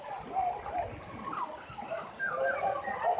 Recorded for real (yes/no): yes